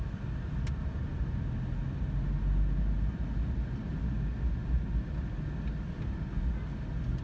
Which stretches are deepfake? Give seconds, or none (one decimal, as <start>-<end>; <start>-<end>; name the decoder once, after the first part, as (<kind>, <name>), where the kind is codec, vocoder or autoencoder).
none